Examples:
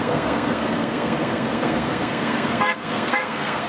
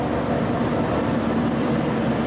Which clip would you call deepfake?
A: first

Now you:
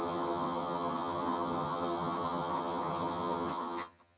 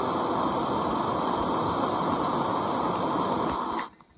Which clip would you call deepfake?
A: first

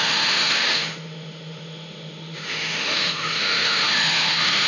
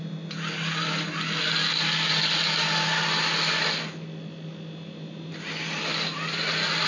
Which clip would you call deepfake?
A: first